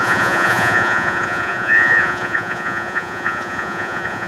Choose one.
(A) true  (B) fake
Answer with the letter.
B